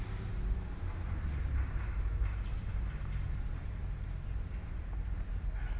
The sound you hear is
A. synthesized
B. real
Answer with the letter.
A